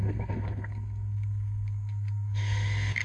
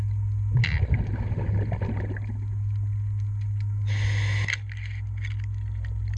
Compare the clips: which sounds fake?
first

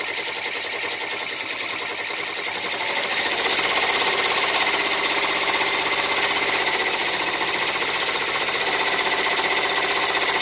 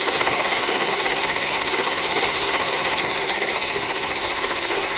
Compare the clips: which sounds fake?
second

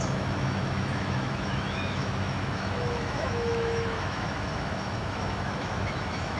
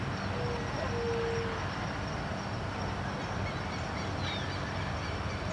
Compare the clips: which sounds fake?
first